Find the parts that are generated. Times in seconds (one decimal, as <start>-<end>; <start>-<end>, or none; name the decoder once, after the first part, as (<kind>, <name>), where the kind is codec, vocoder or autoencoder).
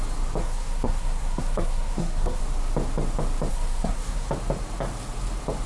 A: 0.4-2.4 (codec, SNAC); 3.5-4.3